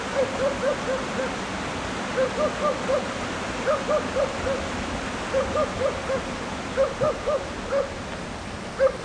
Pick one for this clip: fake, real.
real